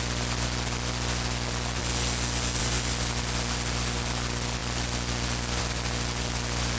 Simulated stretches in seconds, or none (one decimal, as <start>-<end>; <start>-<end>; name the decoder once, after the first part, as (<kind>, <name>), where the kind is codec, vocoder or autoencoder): none